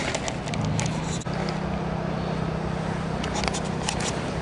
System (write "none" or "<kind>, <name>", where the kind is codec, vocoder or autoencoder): none